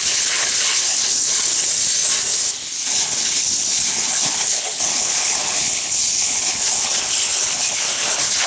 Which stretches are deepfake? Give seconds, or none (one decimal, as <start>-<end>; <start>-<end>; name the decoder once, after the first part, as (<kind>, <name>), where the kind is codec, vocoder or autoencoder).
0.0-1.7 (codec, HILCodec); 2.5-8.5